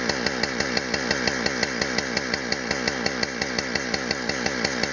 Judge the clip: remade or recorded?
recorded